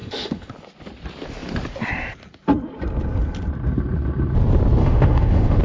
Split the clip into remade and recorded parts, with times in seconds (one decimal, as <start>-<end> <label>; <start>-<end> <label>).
0.0-0.5 remade; 0.5-4.8 recorded; 4.8-5.6 remade